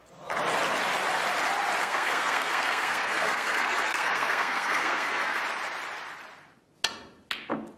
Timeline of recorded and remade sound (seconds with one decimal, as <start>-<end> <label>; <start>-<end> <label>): 0.0-1.8 recorded; 1.8-5.4 remade; 5.4-7.8 recorded